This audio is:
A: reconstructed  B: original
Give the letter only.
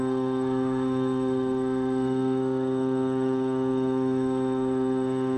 A